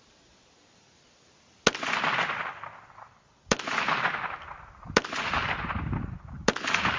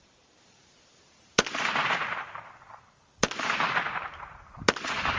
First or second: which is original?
first